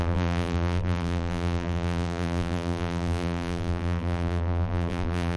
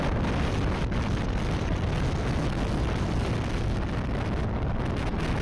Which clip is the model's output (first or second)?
first